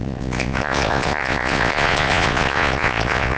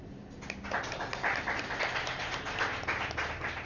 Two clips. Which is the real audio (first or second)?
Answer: second